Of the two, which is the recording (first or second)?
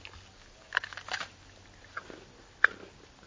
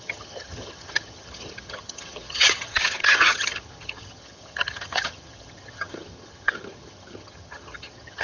first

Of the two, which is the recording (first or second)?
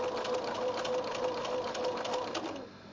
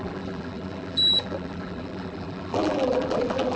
first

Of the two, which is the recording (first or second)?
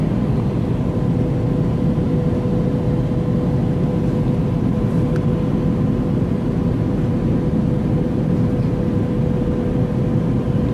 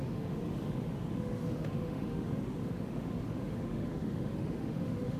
first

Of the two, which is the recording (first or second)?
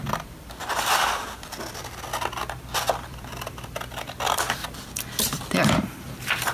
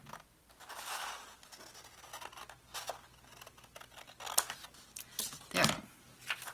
second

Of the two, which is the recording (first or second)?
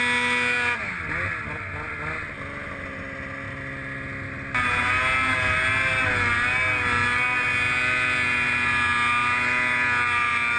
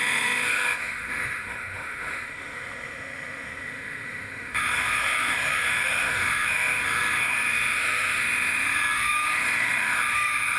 first